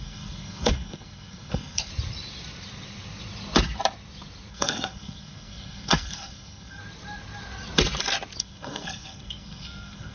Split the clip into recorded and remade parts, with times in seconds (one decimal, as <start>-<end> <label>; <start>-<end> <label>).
0.0-1.9 remade; 1.9-4.5 recorded; 4.5-6.8 remade; 6.8-8.4 recorded; 8.4-10.1 remade